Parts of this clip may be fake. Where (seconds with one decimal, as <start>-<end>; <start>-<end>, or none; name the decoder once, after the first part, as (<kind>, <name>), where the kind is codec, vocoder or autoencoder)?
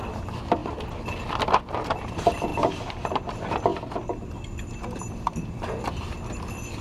0.0-0.6 (vocoder, BigVGAN v2); 2.1-6.8